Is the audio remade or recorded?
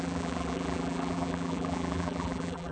remade